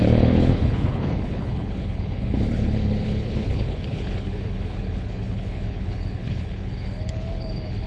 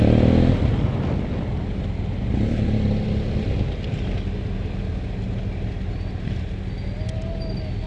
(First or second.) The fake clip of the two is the first